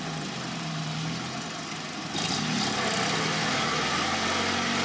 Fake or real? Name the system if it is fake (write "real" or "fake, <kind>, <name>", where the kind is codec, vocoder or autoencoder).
real